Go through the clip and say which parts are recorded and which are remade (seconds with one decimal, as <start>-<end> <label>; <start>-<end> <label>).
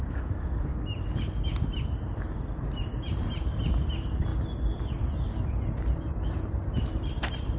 0.0-7.6 recorded